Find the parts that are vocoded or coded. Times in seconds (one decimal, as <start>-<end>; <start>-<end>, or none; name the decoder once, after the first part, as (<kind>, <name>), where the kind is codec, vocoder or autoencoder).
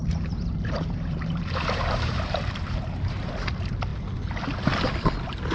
0.0-3.3 (vocoder, BigVGAN v2)